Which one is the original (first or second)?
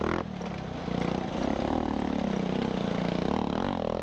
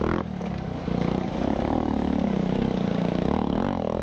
first